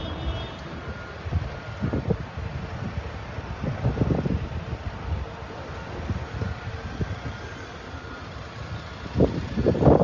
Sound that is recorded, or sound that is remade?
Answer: recorded